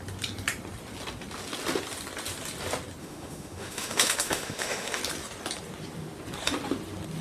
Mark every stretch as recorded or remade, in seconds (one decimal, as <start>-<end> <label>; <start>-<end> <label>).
0.0-3.0 recorded; 3.0-5.0 remade; 5.0-7.2 recorded